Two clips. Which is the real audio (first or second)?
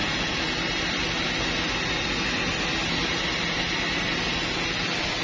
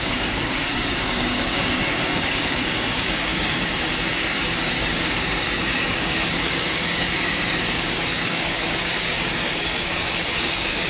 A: first